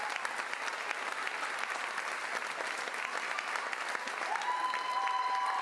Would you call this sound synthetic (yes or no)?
no